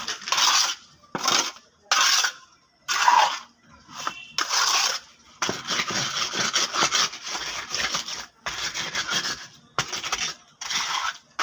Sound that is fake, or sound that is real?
real